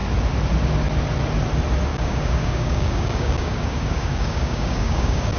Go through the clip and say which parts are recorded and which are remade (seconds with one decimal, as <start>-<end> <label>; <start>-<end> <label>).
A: 0.0-1.9 recorded; 1.9-5.4 remade

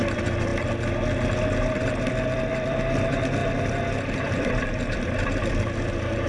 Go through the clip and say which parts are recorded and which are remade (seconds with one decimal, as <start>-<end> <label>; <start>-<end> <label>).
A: 0.0-0.5 remade; 0.5-1.6 recorded; 1.6-6.3 remade

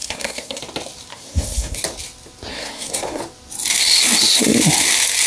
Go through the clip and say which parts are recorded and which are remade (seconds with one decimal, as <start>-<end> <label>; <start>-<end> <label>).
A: 0.0-0.6 remade; 0.6-1.1 recorded; 1.1-1.8 remade; 1.8-2.5 recorded; 2.5-3.2 remade; 3.2-5.3 recorded

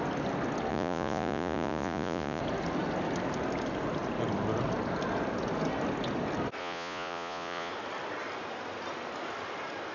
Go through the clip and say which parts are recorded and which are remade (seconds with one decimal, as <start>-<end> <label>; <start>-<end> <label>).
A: 0.0-0.7 recorded; 0.7-2.4 remade; 2.4-6.6 recorded; 6.6-7.7 remade; 7.7-9.9 recorded

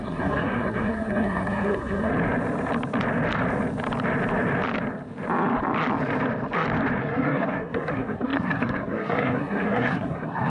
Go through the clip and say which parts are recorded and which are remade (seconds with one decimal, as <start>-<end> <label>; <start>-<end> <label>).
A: 0.0-2.1 remade; 2.1-7.0 recorded; 7.0-10.5 remade

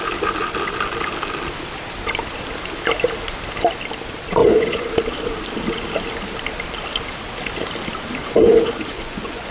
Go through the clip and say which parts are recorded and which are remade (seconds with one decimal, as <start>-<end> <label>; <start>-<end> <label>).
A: 0.0-4.4 recorded; 4.4-4.9 remade; 4.9-8.2 recorded; 8.2-9.5 remade

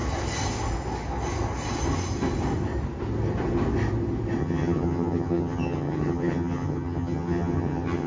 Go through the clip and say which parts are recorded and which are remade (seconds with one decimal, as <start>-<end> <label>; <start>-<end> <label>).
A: 0.0-4.4 recorded; 4.4-8.1 remade

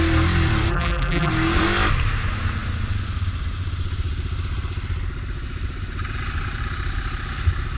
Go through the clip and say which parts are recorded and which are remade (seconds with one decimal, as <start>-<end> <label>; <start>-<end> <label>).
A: 0.0-0.7 recorded; 0.7-1.3 remade; 1.3-7.8 recorded